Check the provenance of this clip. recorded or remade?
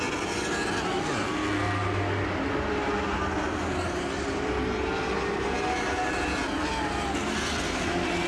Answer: recorded